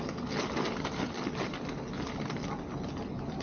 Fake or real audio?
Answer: real